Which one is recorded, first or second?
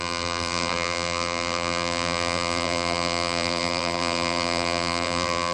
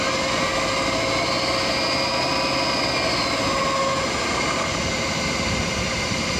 second